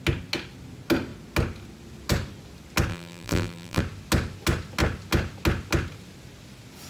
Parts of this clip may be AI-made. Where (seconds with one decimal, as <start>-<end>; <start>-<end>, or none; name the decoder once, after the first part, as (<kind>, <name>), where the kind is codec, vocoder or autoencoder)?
2.9-3.8 (vocoder, BigVGAN v2)